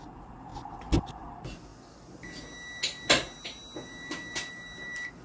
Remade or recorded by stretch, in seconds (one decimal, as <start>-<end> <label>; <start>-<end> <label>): 0.0-5.2 recorded